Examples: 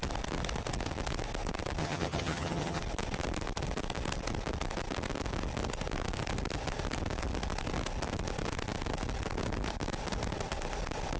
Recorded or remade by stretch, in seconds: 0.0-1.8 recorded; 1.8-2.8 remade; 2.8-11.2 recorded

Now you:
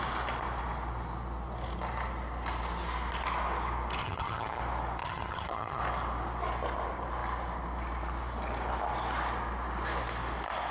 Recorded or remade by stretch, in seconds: 0.0-4.0 recorded; 4.0-4.6 remade; 4.6-5.0 recorded; 5.0-5.8 remade; 5.8-10.7 recorded

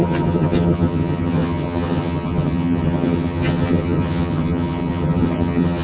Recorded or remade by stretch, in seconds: 0.0-5.8 remade

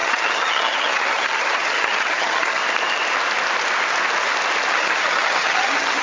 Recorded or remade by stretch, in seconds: 0.0-2.6 remade; 2.6-4.7 recorded; 4.7-6.0 remade